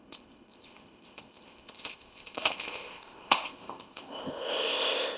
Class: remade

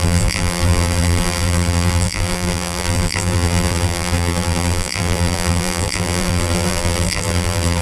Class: remade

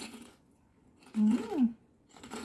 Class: remade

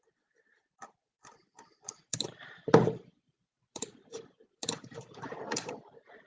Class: remade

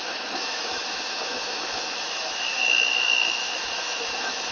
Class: remade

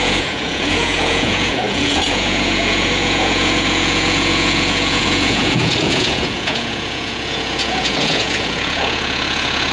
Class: remade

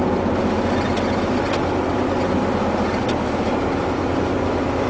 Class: recorded